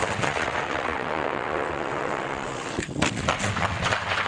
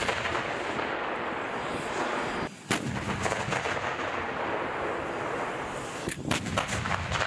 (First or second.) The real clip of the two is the second